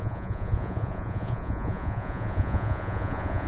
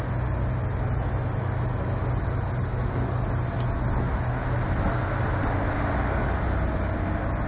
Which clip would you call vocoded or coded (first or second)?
first